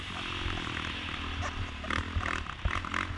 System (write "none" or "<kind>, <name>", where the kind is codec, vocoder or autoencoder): none